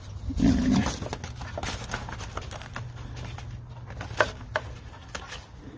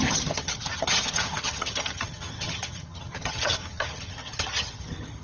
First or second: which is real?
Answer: first